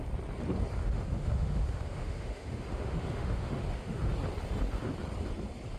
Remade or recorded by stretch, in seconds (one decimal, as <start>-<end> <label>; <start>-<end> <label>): 0.0-0.8 recorded; 0.8-4.1 remade; 4.1-5.8 recorded